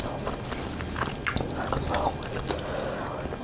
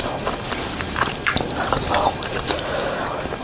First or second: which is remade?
second